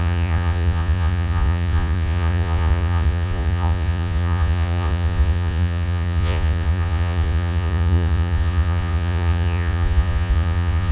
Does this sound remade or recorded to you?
remade